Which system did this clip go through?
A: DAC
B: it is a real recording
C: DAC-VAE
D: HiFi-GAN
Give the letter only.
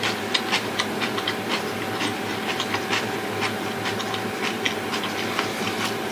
B